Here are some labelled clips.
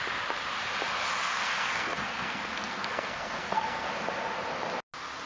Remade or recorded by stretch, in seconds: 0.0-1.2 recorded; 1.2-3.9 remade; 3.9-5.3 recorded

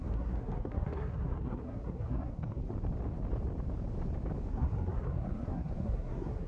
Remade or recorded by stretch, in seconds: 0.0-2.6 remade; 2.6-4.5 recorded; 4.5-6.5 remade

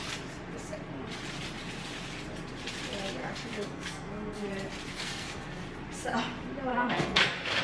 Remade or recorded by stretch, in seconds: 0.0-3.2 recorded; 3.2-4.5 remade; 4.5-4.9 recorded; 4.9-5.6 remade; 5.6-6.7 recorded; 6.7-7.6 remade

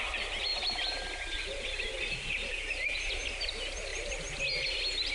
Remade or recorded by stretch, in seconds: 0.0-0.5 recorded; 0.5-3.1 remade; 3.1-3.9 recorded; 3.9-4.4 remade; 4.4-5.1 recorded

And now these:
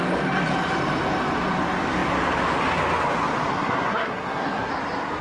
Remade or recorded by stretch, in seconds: 0.0-3.5 recorded; 3.5-4.7 remade; 4.7-5.2 recorded

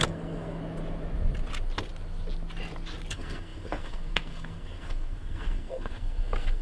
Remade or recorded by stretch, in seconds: 0.0-0.6 remade; 0.6-3.1 recorded; 3.1-6.6 remade

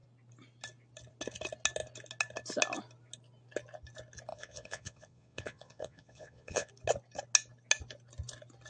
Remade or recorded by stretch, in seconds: 0.0-4.3 recorded; 4.3-6.7 remade; 6.7-8.7 recorded

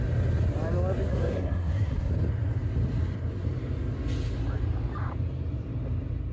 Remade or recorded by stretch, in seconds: 0.0-1.1 recorded; 1.1-2.1 remade; 2.1-6.3 recorded